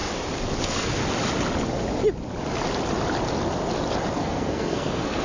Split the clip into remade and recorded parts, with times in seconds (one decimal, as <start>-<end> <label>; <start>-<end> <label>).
0.0-0.6 recorded; 0.6-1.0 remade; 1.0-4.1 recorded; 4.1-5.2 remade